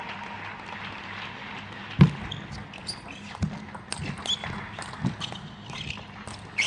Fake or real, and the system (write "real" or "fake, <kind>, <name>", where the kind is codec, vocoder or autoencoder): real